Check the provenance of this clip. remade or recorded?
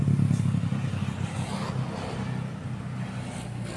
recorded